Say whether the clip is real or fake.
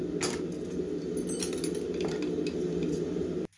real